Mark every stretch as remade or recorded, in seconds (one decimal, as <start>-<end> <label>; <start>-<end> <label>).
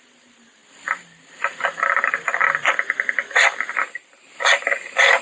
0.0-5.2 recorded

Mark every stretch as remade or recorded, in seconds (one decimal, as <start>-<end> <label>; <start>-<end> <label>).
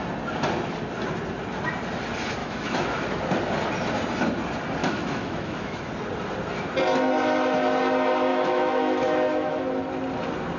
0.0-2.4 recorded; 2.4-3.2 remade; 3.2-4.8 recorded; 4.8-5.9 remade; 5.9-8.3 recorded; 8.3-9.6 remade; 9.6-10.6 recorded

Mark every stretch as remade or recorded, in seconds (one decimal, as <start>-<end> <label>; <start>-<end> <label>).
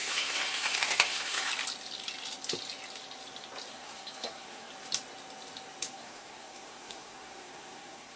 0.0-1.5 remade; 1.5-3.7 recorded; 3.7-4.7 remade; 4.7-5.9 recorded; 5.9-8.2 remade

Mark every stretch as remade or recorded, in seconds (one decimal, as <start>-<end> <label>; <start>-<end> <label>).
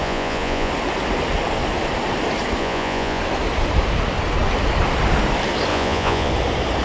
0.0-0.7 remade; 0.7-2.6 recorded; 2.6-3.2 remade; 3.2-5.7 recorded; 5.7-6.3 remade; 6.3-6.8 recorded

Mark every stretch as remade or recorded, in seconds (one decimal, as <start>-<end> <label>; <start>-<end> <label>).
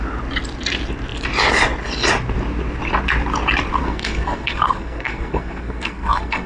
0.0-3.8 recorded; 3.8-6.5 remade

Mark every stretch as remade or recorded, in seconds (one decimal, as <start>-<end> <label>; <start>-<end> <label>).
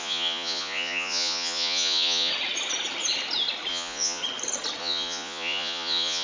0.0-2.3 remade; 2.3-3.7 recorded; 3.7-4.2 remade; 4.2-4.8 recorded; 4.8-6.2 remade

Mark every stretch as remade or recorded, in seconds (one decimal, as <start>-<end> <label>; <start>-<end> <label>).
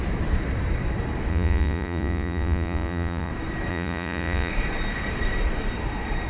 0.0-1.3 recorded; 1.3-3.3 remade; 3.3-3.7 recorded; 3.7-4.5 remade; 4.5-6.3 recorded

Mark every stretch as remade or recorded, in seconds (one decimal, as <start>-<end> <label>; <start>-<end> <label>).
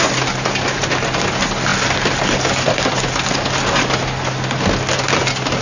0.0-5.6 recorded